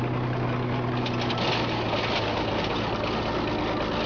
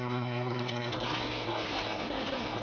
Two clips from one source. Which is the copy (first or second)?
second